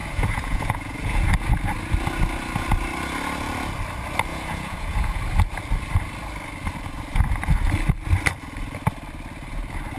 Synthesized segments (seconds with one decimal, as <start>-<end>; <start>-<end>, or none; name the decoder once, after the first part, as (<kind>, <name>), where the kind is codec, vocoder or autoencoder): 0.0-1.3 (vocoder, Vocos); 4.3-5.2